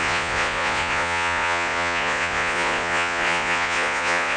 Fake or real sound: fake